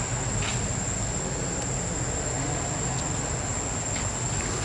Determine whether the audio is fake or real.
real